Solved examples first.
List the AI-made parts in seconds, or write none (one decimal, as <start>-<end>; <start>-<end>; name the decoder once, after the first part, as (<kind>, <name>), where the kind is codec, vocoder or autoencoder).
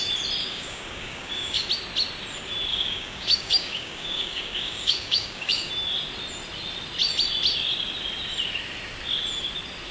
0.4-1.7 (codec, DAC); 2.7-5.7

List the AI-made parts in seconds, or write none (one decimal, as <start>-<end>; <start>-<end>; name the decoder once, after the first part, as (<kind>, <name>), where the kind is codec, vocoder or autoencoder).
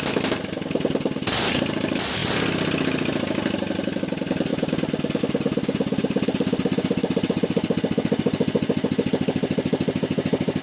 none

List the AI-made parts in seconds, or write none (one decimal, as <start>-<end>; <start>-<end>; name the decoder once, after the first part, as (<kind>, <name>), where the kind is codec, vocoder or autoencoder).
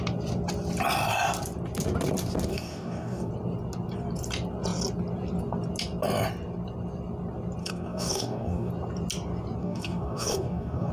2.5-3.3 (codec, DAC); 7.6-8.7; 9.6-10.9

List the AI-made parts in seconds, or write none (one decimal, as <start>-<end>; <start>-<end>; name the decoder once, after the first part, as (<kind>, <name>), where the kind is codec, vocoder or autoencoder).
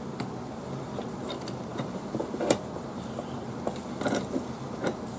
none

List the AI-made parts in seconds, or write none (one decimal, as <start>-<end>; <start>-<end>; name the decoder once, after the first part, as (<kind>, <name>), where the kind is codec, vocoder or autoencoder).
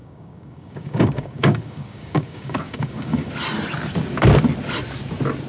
0.0-3.3 (codec, DAC)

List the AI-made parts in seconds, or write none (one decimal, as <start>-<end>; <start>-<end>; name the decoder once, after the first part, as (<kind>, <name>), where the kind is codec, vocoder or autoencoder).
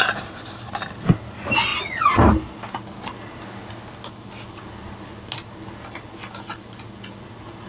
none